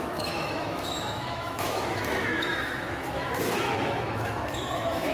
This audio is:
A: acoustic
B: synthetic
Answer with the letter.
B